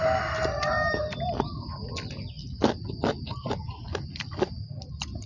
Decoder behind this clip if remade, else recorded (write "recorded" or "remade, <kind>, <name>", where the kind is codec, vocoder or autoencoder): recorded